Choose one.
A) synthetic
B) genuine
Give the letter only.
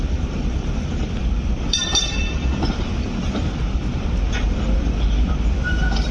A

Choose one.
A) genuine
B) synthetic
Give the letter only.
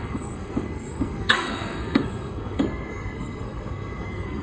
B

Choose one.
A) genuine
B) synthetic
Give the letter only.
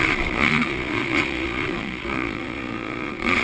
B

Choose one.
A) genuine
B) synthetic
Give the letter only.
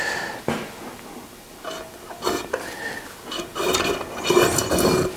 A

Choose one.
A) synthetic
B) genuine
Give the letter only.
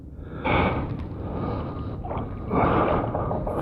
B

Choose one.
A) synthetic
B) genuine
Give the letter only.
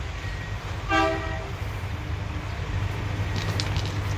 B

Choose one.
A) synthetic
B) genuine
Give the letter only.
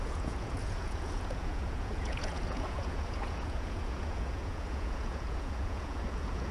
A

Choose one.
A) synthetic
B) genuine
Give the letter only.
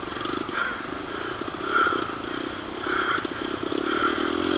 B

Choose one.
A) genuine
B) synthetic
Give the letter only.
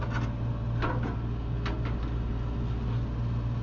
A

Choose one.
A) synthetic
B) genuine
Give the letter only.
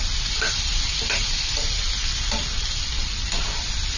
B